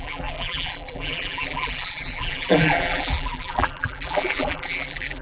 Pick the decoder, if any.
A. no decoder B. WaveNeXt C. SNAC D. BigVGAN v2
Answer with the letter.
D